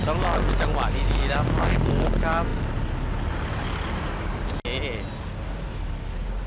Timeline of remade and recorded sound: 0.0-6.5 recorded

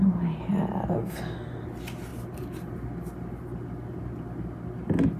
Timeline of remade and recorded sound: 0.0-0.9 recorded; 0.9-1.6 remade; 1.6-5.2 recorded

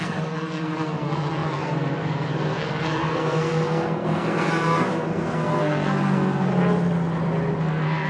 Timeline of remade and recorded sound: 0.0-6.5 remade; 6.5-7.6 recorded; 7.6-8.1 remade

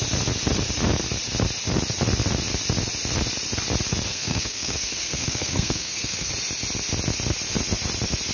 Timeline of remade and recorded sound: 0.0-4.1 recorded; 4.1-6.3 remade; 6.3-8.3 recorded

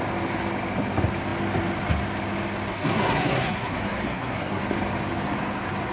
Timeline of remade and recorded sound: 0.0-2.7 recorded; 2.7-4.6 remade; 4.6-5.9 recorded

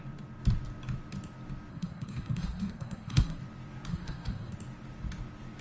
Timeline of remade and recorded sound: 0.0-1.7 recorded; 1.7-3.4 remade; 3.4-3.9 recorded; 3.9-4.5 remade; 4.5-5.6 recorded

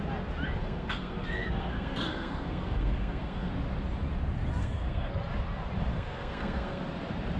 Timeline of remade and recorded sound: 0.0-0.6 recorded; 0.6-3.5 remade; 3.5-4.6 recorded; 4.6-5.1 remade; 5.1-5.9 recorded; 5.9-6.8 remade; 6.8-7.4 recorded